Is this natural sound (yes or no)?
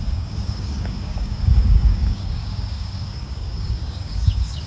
no